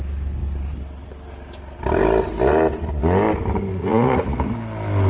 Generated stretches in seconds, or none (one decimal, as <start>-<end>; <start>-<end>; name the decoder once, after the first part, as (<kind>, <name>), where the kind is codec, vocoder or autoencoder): 3.7-4.5 (vocoder, Vocos)